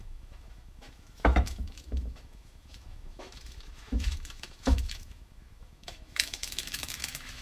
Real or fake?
fake